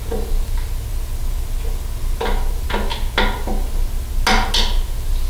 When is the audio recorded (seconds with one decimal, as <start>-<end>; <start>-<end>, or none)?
0.0-5.3